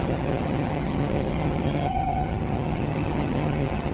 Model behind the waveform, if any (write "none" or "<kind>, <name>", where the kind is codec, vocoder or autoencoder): vocoder, HiFi-GAN